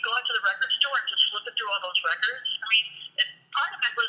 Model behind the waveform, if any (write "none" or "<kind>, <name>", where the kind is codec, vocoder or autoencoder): none